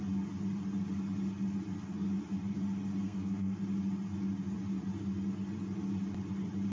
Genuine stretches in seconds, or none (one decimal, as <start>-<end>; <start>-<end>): 0.0-3.0; 3.6-6.7